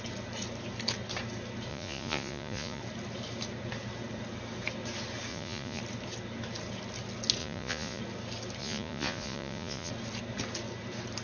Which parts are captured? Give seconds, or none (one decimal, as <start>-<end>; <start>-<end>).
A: 0.0-1.7; 2.8-5.3; 5.8-7.4; 8.0-8.6; 9.9-11.2